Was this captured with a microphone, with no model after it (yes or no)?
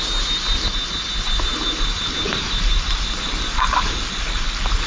yes